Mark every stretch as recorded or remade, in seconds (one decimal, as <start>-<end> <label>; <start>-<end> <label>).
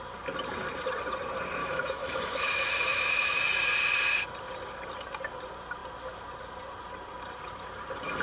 0.0-1.6 recorded; 1.6-3.4 remade; 3.4-8.2 recorded